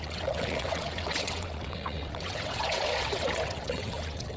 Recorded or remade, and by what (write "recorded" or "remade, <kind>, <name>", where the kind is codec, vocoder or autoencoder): remade, vocoder, WaveNeXt